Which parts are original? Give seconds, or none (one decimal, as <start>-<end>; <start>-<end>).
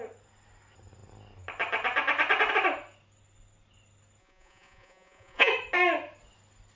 0.0-4.2; 5.5-6.8